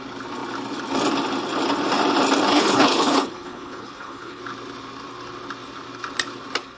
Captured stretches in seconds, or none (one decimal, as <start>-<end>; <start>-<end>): 0.0-2.5; 4.4-6.8